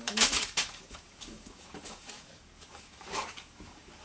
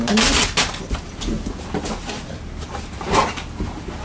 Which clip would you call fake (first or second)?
first